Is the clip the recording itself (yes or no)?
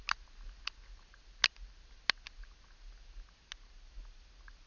yes